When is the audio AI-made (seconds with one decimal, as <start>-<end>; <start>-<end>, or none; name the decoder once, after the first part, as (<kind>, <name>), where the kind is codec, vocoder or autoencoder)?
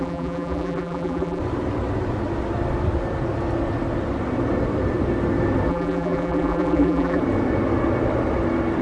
0.0-1.4 (vocoder, BigVGAN v2); 5.7-7.2